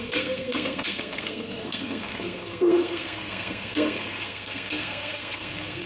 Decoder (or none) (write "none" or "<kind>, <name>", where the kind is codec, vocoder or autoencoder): codec, SNAC